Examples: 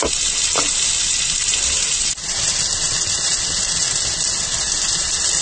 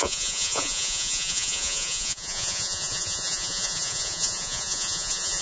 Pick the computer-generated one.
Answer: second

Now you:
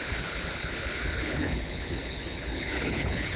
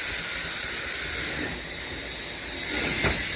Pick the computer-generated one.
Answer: first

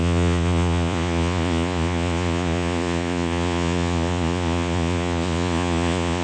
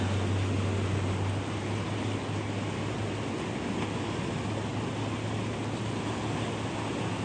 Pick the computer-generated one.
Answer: first